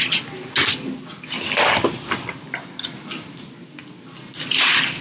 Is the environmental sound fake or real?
real